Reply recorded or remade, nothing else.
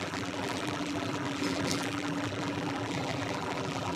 remade